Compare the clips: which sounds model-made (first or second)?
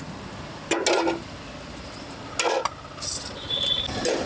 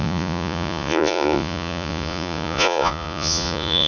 second